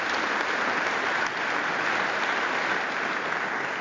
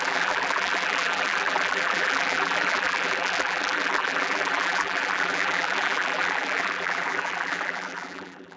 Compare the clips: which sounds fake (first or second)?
second